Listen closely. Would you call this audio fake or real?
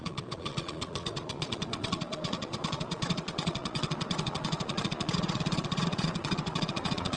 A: fake